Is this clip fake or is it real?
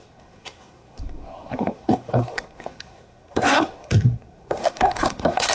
fake